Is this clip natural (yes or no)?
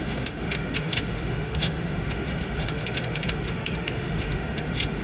no